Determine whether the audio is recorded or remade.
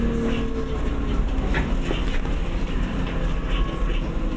recorded